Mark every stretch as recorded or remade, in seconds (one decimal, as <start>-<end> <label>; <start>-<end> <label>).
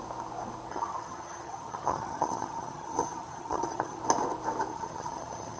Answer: 0.0-0.7 recorded; 0.7-4.0 remade; 4.0-4.7 recorded; 4.7-5.6 remade